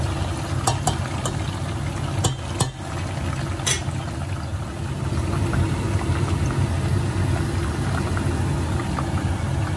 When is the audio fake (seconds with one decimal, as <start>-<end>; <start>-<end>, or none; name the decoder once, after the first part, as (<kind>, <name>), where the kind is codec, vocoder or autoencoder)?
none